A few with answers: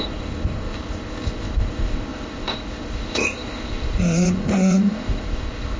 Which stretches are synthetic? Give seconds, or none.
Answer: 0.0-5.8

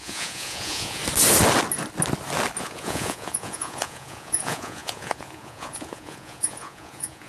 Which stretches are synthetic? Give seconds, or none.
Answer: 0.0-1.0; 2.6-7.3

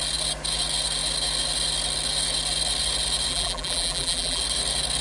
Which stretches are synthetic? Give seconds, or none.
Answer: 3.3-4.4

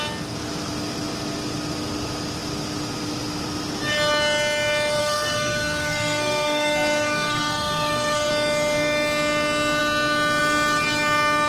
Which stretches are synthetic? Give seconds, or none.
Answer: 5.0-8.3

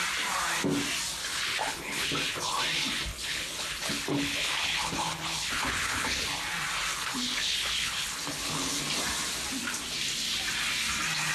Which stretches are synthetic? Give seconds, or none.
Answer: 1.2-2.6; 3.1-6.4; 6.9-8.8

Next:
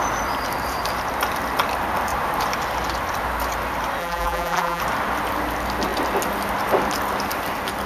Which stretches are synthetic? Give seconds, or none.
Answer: 4.0-4.8